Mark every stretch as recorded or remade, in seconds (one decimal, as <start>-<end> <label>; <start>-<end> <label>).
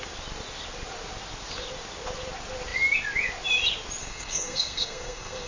0.0-4.0 recorded; 4.0-5.5 remade